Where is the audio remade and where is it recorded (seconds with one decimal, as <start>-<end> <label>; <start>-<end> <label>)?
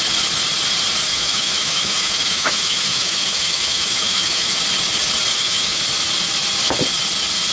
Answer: 0.0-1.1 recorded; 1.1-4.6 remade; 4.6-5.3 recorded; 5.3-5.8 remade; 5.8-7.5 recorded